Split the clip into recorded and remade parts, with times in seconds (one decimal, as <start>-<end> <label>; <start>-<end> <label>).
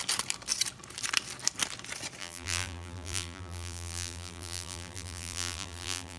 0.0-2.2 recorded; 2.2-6.2 remade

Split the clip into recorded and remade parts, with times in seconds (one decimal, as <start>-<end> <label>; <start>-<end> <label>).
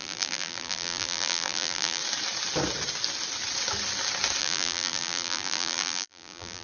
0.0-2.0 remade; 2.0-4.4 recorded; 4.4-6.6 remade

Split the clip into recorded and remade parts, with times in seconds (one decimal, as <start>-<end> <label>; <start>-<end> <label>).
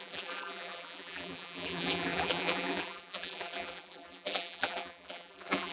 0.0-5.7 remade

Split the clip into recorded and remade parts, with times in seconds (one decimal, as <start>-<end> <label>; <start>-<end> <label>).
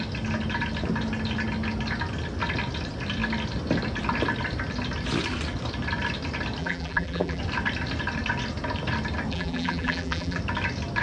0.0-6.6 recorded; 6.6-7.4 remade; 7.4-9.3 recorded; 9.3-10.4 remade; 10.4-11.0 recorded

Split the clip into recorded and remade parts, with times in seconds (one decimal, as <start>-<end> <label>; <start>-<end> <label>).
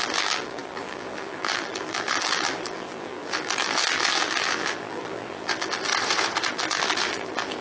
0.0-5.9 remade; 5.9-6.5 recorded; 6.5-7.6 remade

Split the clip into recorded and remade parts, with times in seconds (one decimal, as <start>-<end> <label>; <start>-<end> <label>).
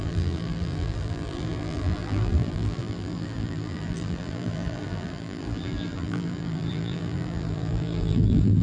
0.0-8.6 remade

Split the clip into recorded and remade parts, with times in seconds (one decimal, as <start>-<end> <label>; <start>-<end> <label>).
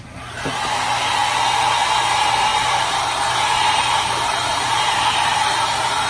0.0-2.5 recorded; 2.5-6.1 remade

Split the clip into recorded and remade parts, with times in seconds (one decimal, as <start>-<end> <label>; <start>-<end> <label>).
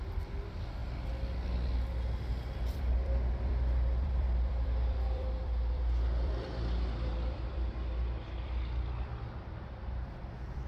0.0-0.8 remade; 0.8-2.7 recorded; 2.7-10.7 remade